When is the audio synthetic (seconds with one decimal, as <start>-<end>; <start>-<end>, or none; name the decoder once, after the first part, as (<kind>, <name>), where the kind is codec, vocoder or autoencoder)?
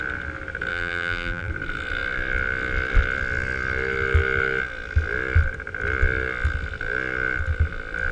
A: 0.7-1.5 (vocoder, BigVGAN v2)